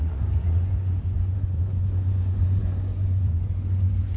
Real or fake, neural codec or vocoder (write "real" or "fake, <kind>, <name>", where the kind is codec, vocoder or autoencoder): fake, vocoder, Vocos